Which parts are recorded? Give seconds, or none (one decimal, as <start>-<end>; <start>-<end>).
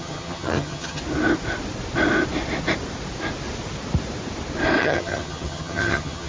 1.0-4.8